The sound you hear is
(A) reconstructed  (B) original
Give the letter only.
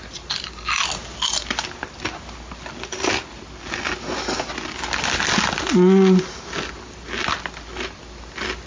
B